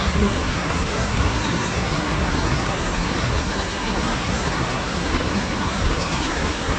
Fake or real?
fake